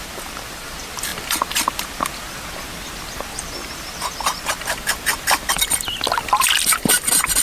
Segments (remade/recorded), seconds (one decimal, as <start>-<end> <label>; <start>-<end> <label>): 0.0-7.4 recorded